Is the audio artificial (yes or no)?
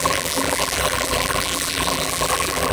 yes